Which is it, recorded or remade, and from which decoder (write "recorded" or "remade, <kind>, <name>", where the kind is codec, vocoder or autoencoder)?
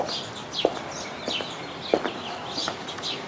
recorded